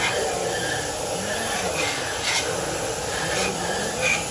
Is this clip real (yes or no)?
yes